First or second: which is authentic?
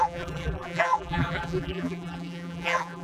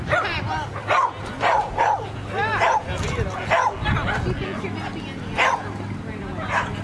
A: second